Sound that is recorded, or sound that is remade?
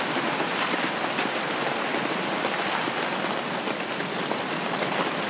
recorded